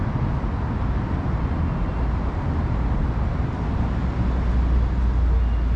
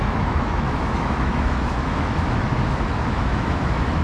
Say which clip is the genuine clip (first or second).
first